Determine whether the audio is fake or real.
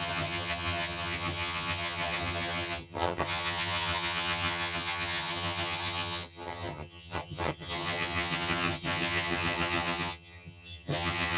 fake